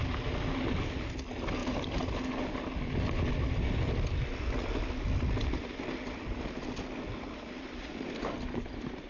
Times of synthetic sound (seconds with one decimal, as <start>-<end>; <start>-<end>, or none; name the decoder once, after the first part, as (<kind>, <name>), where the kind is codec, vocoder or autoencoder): none